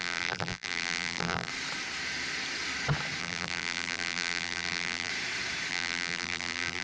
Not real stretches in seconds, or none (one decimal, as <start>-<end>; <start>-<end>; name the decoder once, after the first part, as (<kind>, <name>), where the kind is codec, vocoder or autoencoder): 0.0-1.5 (vocoder, BigVGAN v2); 3.2-5.1; 5.7-6.8